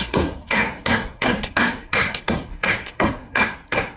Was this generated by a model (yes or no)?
yes